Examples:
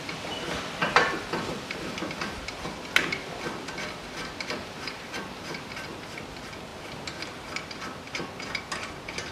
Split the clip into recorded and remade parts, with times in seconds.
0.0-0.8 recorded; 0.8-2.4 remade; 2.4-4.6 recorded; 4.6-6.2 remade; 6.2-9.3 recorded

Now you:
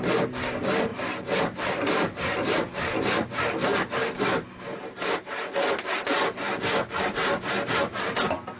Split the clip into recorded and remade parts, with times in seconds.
0.0-8.6 recorded

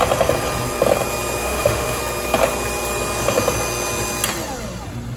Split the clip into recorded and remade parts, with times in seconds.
0.0-1.4 recorded; 1.4-2.0 remade; 2.0-5.2 recorded

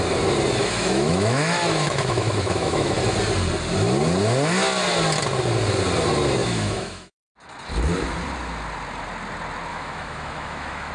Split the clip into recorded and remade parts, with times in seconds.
0.0-0.6 recorded; 0.6-3.0 remade; 3.0-6.4 recorded; 6.4-7.3 remade; 7.3-9.7 recorded; 9.7-10.9 remade

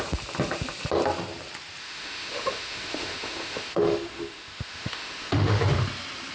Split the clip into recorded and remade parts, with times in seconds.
0.0-1.8 recorded; 1.8-5.6 remade; 5.6-6.3 recorded